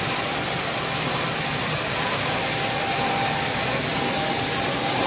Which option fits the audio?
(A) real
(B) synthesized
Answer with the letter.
A